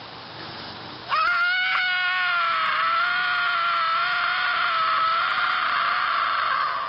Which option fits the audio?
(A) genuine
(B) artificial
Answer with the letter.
A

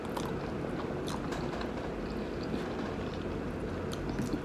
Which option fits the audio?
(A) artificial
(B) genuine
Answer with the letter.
B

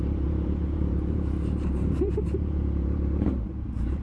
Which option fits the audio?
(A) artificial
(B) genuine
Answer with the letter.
A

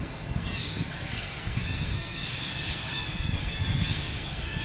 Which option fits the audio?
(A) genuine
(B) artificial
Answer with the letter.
B